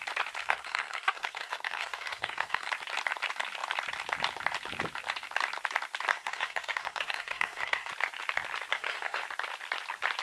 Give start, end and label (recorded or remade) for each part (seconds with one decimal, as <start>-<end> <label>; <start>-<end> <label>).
0.0-0.4 recorded; 0.4-2.7 remade; 2.7-6.1 recorded; 6.1-7.9 remade; 7.9-8.7 recorded; 8.7-9.2 remade; 9.2-10.2 recorded